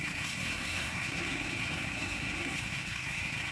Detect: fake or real fake